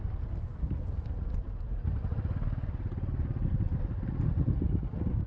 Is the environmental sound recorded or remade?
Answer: recorded